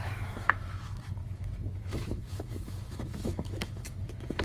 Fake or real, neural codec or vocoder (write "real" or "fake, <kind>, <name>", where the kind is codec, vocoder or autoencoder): fake, autoencoder, DAC-VAE